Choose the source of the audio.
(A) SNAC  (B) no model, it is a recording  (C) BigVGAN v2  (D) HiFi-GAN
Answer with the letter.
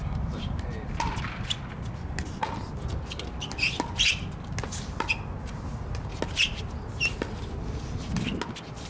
B